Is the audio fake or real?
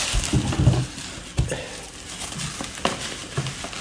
real